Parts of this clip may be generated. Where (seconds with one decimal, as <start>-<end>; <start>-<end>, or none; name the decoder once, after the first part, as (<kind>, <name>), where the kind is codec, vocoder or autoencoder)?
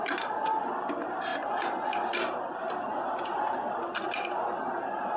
none